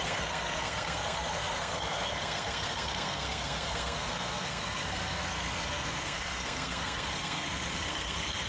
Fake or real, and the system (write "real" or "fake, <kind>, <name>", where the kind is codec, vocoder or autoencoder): fake, codec, SNAC